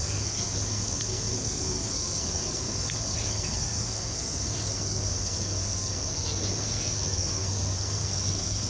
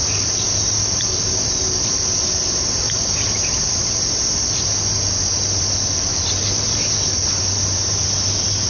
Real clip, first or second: second